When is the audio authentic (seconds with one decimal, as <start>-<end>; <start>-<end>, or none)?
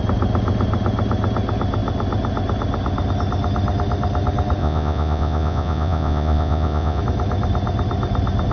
0.0-4.6; 7.0-8.5